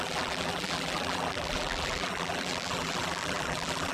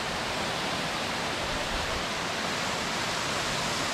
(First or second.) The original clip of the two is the second